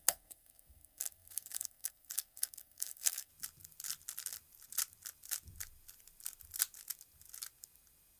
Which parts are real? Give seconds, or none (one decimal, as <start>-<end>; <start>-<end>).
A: 3.3-8.2